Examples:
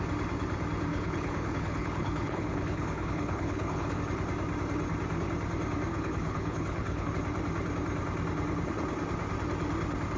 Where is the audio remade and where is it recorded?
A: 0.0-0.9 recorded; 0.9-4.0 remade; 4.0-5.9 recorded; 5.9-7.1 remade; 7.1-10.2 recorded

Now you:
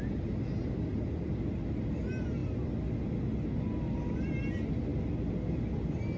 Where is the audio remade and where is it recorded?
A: 0.0-6.2 recorded

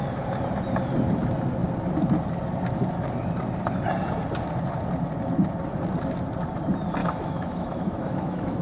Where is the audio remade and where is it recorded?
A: 0.0-7.0 recorded; 7.0-8.6 remade

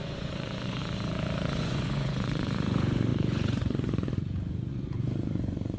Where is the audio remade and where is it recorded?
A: 0.0-0.8 remade; 0.8-1.6 recorded; 1.6-5.8 remade

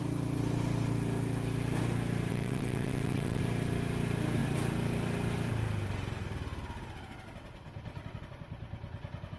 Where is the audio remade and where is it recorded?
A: 0.0-2.3 recorded; 2.3-3.4 remade; 3.4-9.4 recorded

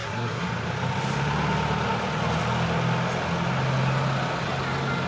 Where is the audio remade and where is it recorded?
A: 0.0-0.5 remade; 0.5-5.1 recorded

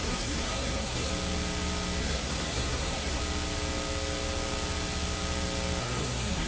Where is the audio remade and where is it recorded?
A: 0.0-1.1 remade; 1.1-2.0 recorded; 2.0-3.2 remade; 3.2-5.8 recorded; 5.8-6.5 remade

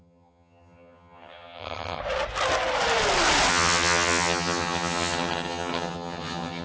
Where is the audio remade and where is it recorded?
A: 0.0-2.0 remade; 2.0-3.5 recorded; 3.5-6.6 remade